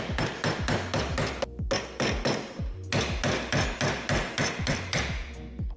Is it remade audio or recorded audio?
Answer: recorded